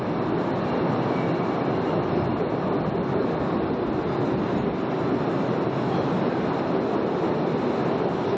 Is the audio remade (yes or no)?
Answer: no